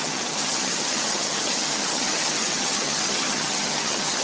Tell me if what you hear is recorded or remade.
remade